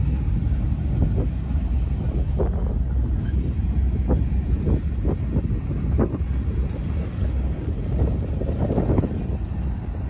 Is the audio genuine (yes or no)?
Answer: yes